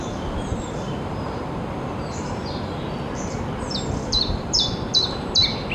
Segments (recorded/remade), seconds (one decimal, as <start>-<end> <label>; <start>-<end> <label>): 0.0-3.4 remade; 3.4-4.1 recorded; 4.1-5.3 remade; 5.3-5.7 recorded